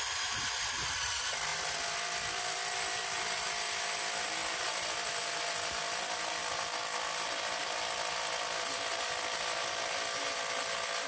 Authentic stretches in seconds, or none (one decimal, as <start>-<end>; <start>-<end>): 0.0-11.1